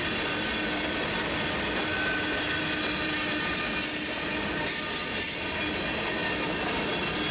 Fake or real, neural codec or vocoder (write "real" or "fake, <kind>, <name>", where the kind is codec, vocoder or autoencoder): real